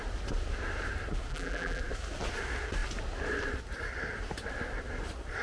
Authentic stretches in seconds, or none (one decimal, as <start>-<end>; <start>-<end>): 0.0-1.3; 1.8-5.4